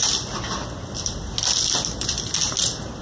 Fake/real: real